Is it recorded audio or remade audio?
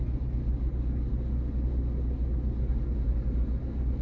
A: recorded